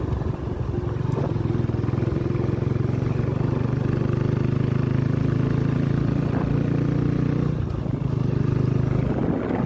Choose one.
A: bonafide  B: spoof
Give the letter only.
A